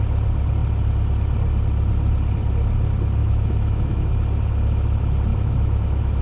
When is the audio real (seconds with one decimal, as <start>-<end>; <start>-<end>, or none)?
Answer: 0.0-3.2; 4.0-5.3